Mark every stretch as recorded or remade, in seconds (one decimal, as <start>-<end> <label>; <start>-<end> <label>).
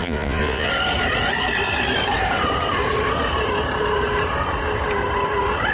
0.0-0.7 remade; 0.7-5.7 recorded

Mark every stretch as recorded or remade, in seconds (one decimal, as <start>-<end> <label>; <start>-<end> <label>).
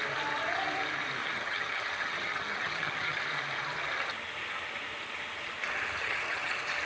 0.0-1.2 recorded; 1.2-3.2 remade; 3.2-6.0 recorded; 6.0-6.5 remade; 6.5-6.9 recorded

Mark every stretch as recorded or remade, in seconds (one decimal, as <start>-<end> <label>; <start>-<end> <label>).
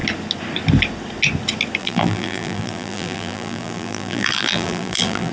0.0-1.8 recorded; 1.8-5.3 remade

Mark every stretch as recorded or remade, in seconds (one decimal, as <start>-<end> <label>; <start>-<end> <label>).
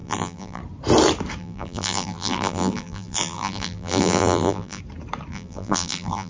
0.0-0.6 remade; 0.6-1.4 recorded; 1.4-4.8 remade; 4.8-5.3 recorded; 5.3-6.3 remade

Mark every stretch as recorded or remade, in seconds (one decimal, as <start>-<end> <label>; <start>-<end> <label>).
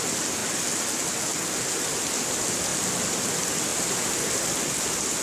0.0-5.2 recorded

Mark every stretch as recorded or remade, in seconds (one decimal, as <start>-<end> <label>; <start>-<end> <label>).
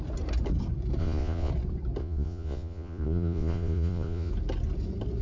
0.0-1.0 recorded; 1.0-1.5 remade; 1.5-2.0 recorded; 2.0-4.3 remade; 4.3-5.2 recorded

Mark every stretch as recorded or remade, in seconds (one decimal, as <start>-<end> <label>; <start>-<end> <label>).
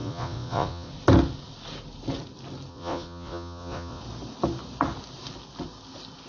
0.0-0.9 remade; 0.9-2.7 recorded; 2.7-4.0 remade; 4.0-6.3 recorded